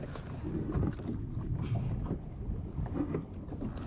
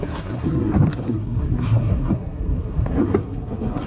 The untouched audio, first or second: first